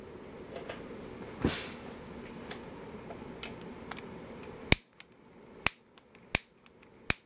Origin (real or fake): real